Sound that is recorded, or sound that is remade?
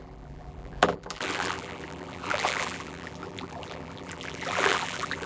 remade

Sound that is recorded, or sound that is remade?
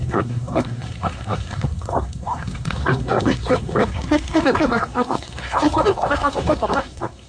remade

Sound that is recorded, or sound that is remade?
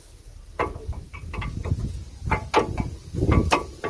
recorded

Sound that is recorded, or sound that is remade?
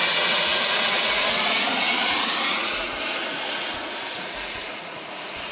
remade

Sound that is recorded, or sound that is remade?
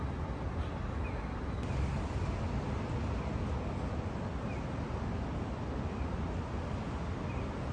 recorded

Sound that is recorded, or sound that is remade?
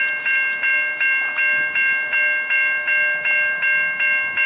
recorded